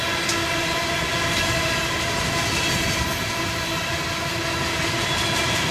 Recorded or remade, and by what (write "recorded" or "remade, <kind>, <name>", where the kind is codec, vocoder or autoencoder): recorded